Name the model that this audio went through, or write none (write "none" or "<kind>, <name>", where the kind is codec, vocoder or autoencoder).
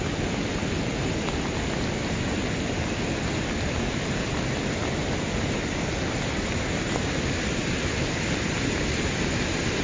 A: none